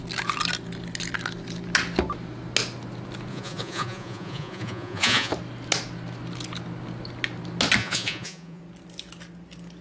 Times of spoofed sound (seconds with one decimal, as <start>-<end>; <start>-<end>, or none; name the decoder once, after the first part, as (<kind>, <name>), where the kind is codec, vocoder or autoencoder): 3.3-5.3 (vocoder, Vocos); 7.8-8.6

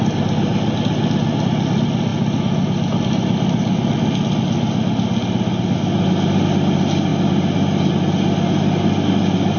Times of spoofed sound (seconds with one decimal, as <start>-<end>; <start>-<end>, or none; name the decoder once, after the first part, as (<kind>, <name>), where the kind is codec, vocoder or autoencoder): none

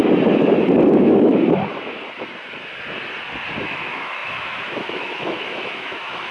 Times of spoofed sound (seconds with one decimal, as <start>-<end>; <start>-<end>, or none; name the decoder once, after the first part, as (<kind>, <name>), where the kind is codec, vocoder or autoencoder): 0.9-1.3 (autoencoder, DAC-VAE); 3.6-6.3

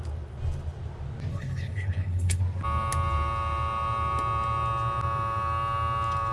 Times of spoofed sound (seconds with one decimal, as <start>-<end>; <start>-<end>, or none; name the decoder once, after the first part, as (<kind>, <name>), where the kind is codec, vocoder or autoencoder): 1.3-2.4 (codec, HILCodec)

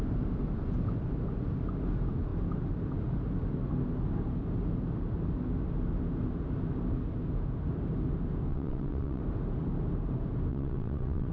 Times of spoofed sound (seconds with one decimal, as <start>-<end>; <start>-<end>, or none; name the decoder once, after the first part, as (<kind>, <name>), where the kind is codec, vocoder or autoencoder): 8.5-9.2 (vocoder, WaveNeXt); 10.5-11.3

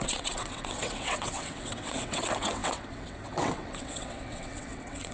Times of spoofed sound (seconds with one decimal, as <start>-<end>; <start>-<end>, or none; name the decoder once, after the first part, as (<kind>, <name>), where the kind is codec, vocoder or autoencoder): 0.0-5.1 (vocoder, WaveNeXt)

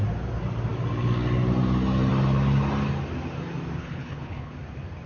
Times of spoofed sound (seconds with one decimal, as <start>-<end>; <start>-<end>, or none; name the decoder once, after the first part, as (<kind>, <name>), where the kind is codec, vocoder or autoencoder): 3.8-4.5 (codec, HILCodec)